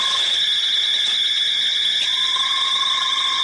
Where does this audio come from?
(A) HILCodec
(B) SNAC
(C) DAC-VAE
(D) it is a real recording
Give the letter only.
D